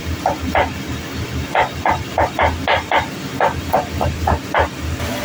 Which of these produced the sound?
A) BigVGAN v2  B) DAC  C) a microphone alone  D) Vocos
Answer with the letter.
C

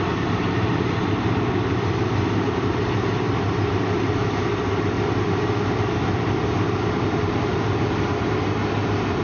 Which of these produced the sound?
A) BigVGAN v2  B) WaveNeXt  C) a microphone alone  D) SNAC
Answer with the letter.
A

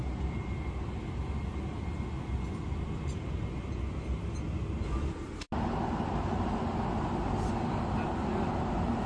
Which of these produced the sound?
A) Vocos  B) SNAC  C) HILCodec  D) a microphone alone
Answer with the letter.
D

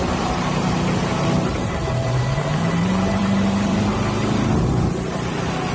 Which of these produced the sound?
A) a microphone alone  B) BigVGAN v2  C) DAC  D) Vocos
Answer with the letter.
B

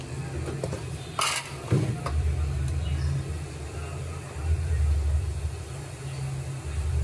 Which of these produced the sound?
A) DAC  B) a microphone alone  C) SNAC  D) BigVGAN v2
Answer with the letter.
B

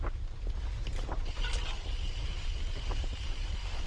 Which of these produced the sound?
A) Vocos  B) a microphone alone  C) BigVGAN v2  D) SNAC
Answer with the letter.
C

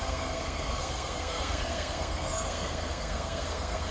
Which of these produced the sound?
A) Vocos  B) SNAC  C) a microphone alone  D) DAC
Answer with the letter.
B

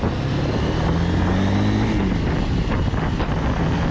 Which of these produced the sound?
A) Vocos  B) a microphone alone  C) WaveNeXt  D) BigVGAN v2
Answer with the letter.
B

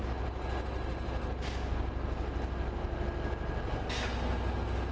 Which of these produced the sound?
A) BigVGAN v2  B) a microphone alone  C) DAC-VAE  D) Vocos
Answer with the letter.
B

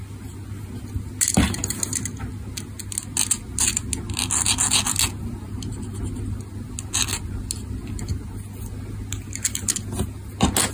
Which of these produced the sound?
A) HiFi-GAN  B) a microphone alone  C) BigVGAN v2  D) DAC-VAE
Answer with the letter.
B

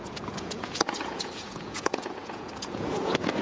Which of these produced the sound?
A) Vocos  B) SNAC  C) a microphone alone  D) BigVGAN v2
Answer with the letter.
A